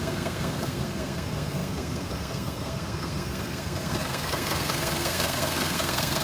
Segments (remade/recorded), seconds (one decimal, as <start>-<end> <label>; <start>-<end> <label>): 0.0-6.2 remade